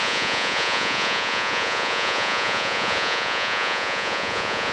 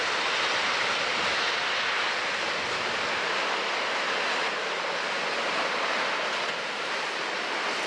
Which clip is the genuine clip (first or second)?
second